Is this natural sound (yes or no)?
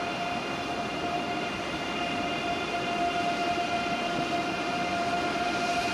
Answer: yes